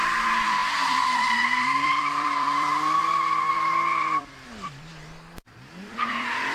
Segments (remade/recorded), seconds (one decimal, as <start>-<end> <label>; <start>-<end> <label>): 0.0-3.0 remade; 3.0-3.5 recorded; 3.5-4.9 remade; 4.9-5.5 recorded; 5.5-6.5 remade